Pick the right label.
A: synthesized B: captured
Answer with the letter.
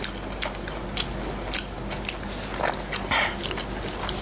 B